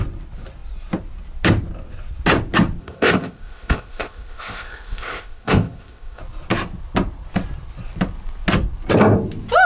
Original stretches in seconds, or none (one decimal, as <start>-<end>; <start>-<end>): 0.0-2.8; 6.2-9.7